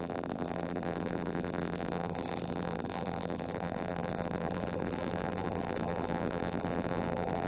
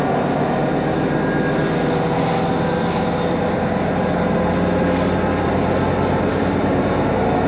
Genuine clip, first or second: second